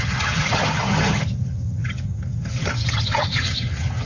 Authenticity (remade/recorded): remade